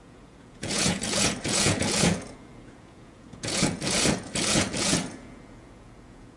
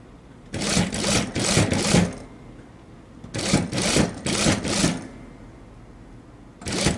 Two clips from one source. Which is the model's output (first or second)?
first